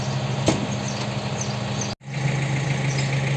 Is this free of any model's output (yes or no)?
yes